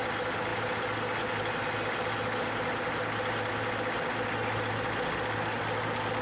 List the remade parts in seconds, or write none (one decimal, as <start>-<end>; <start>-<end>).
none